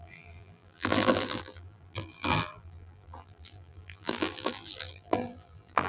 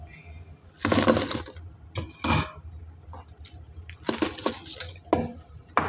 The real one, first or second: second